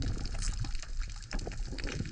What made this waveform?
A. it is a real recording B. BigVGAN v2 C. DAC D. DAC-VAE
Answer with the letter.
A